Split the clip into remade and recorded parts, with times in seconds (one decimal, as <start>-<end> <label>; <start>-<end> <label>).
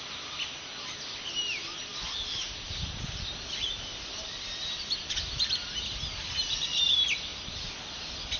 0.0-7.3 recorded; 7.3-8.4 remade